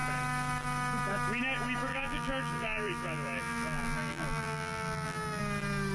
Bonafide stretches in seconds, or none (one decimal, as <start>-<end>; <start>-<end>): 0.0-1.9; 5.4-5.9